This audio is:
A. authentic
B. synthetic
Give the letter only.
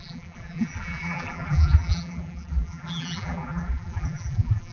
B